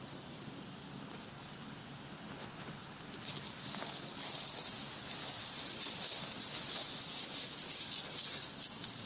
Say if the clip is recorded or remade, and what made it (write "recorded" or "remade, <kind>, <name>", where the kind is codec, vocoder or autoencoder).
recorded